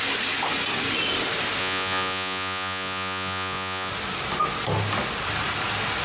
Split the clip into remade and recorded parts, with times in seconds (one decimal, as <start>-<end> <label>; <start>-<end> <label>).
0.0-1.6 recorded; 1.6-3.9 remade; 3.9-6.0 recorded

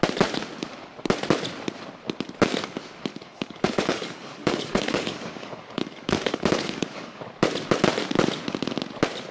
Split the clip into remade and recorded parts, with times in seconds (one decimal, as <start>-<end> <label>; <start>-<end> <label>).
0.0-3.1 recorded; 3.1-7.2 remade; 7.2-9.3 recorded

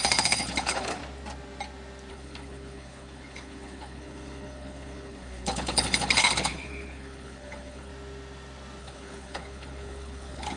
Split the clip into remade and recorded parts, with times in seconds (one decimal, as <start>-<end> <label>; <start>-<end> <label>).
0.0-1.0 remade; 1.0-2.1 recorded; 2.1-7.9 remade; 7.9-8.8 recorded; 8.8-10.6 remade

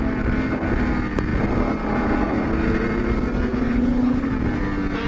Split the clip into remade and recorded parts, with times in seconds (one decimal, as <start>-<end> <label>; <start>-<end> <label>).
0.0-3.5 recorded; 3.5-4.3 remade; 4.3-5.1 recorded